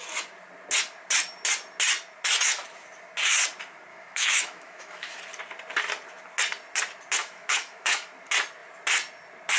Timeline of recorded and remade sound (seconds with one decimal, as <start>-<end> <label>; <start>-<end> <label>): 0.0-3.9 recorded; 3.9-5.2 remade; 5.2-7.2 recorded; 7.2-8.1 remade; 8.1-9.6 recorded